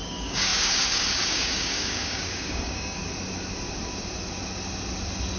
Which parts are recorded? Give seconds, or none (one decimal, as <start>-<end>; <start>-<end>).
3.0-5.4